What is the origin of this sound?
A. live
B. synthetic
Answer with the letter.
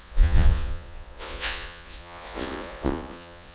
B